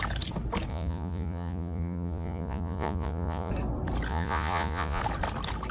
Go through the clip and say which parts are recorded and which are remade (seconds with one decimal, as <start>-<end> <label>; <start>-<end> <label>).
0.0-0.7 recorded; 0.7-3.5 remade; 3.5-4.1 recorded; 4.1-5.0 remade; 5.0-5.7 recorded